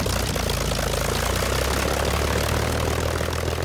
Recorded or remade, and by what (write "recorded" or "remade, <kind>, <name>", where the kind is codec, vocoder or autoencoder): recorded